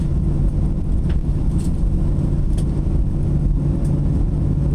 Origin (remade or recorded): recorded